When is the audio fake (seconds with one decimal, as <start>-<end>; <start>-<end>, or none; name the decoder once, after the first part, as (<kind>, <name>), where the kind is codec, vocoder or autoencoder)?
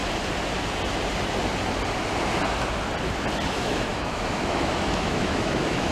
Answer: 3.5-5.9 (autoencoder, DAC-VAE)